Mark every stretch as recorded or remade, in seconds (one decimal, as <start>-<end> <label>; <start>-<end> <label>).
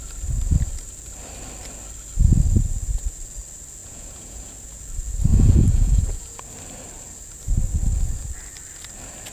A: 0.0-3.8 recorded; 3.8-4.8 remade; 4.8-5.3 recorded; 5.3-6.4 remade; 6.4-9.3 recorded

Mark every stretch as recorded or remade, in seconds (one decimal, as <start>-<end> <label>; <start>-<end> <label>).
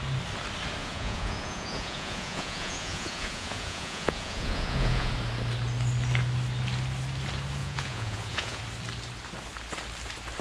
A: 0.0-0.8 recorded; 0.8-5.1 remade; 5.1-7.6 recorded; 7.6-8.6 remade; 8.6-10.4 recorded